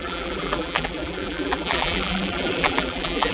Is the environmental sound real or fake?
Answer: fake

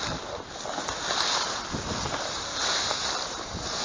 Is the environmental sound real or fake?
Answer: fake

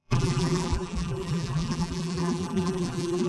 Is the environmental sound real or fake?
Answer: fake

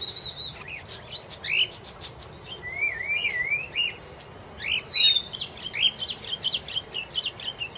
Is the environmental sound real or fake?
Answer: real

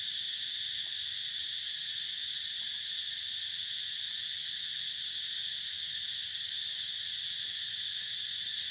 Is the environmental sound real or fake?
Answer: real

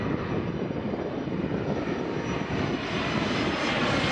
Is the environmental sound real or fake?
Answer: real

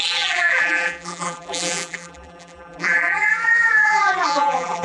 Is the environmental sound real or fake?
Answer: fake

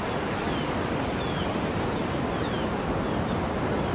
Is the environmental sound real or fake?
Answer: real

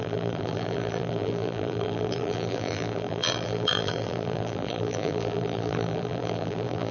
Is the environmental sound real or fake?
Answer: fake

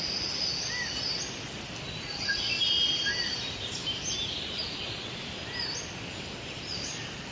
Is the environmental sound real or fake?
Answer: fake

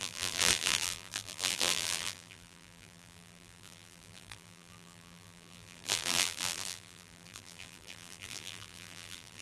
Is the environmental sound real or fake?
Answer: fake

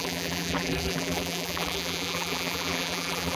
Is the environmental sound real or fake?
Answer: fake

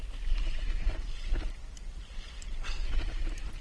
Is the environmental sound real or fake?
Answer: real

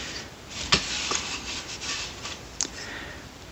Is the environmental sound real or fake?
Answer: fake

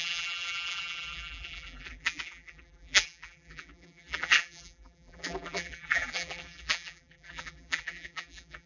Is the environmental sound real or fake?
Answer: fake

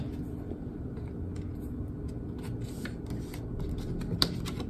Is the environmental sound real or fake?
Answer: real